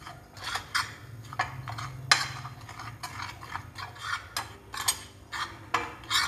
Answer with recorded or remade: recorded